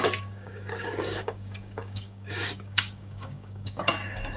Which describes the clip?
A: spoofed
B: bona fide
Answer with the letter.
A